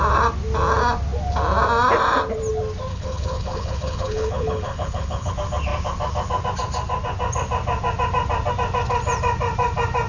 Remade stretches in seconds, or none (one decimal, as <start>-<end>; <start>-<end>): 2.9-5.3